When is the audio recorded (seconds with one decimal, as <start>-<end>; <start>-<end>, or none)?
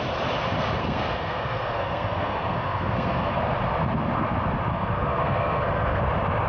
0.0-0.8; 3.4-4.7; 6.0-6.5